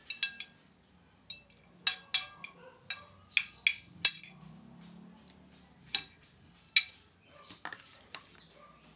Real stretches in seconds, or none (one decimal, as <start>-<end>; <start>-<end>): 0.0-9.0